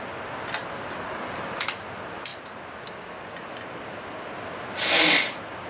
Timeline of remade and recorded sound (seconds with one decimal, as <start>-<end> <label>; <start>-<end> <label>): 0.0-5.7 recorded